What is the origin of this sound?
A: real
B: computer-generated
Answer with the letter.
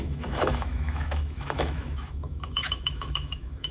B